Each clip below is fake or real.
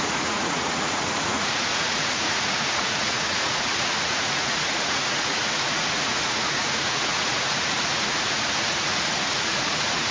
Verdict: fake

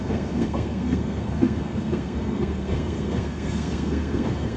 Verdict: fake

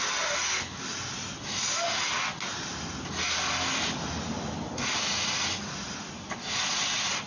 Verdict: real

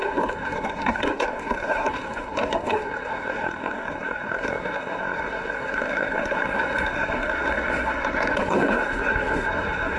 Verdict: fake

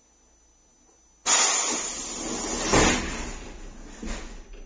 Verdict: real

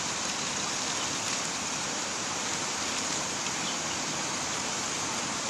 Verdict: fake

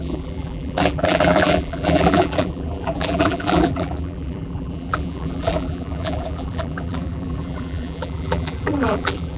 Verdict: fake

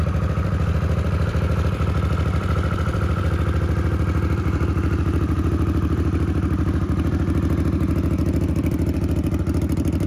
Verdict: fake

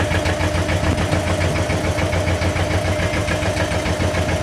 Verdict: real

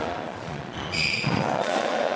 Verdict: fake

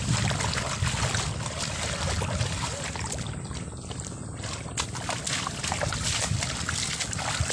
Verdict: real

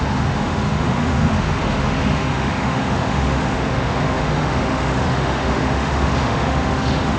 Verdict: fake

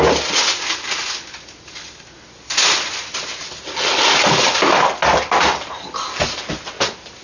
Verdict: real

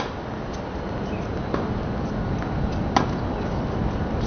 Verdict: real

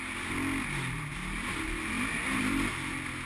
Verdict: real